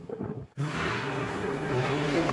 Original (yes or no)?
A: no